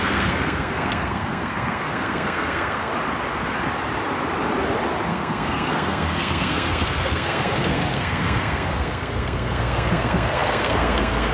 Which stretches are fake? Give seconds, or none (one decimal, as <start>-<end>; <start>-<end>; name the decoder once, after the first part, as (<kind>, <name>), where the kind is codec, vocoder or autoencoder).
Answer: 0.0-2.9 (codec, SNAC); 5.1-11.3

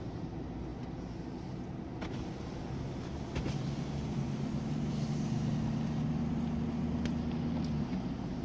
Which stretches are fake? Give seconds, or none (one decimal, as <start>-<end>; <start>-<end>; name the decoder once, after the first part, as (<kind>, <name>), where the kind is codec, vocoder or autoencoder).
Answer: none

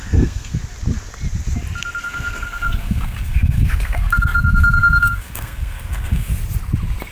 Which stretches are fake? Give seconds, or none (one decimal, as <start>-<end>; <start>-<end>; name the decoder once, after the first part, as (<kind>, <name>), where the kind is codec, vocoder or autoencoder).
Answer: 0.0-0.6 (codec, SNAC); 2.0-6.3

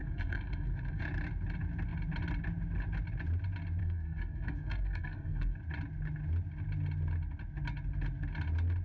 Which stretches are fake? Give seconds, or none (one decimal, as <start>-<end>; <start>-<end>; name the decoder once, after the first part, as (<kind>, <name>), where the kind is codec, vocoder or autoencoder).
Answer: 0.0-1.0 (codec, SNAC); 3.8-5.6

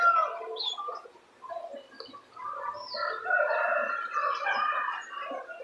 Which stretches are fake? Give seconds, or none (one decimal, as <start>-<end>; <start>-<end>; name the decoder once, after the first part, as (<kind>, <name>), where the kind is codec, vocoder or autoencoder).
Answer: none

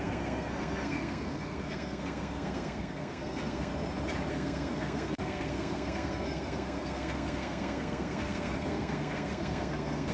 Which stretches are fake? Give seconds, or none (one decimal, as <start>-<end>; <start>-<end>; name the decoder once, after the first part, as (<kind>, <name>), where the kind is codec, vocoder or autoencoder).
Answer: 0.0-3.7 (codec, SNAC); 4.3-10.1

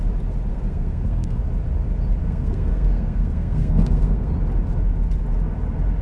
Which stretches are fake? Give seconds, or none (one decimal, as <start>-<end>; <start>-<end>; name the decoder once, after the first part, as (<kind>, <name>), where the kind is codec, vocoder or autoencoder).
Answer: 0.5-1.4 (codec, SNAC); 2.2-4.3

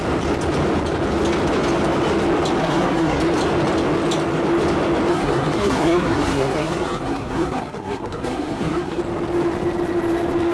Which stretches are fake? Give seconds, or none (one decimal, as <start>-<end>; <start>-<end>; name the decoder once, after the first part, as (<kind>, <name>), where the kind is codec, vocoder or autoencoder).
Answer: 2.6-3.2 (codec, SNAC); 5.1-9.0